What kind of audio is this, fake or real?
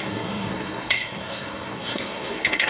fake